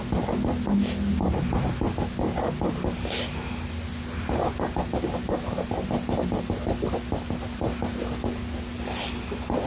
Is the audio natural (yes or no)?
yes